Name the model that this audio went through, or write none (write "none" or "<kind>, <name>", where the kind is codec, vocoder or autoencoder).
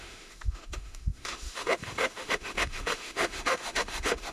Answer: autoencoder, DAC-VAE